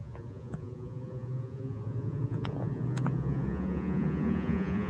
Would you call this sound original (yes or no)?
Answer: no